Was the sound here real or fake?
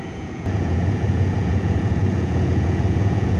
fake